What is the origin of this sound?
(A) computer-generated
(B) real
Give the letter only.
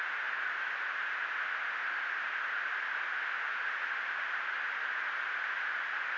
B